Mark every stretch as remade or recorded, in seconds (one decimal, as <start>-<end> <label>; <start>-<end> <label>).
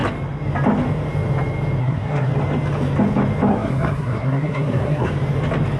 0.0-1.8 recorded; 1.8-2.3 remade; 2.3-3.5 recorded; 3.5-5.1 remade; 5.1-5.8 recorded